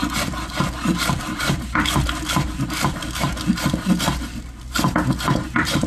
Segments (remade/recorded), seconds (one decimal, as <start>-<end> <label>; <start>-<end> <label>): 0.0-5.9 recorded